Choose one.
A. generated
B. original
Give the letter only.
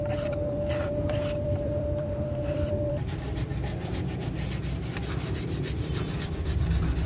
A